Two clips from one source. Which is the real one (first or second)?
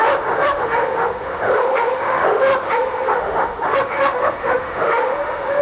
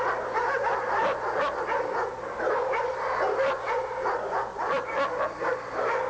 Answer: second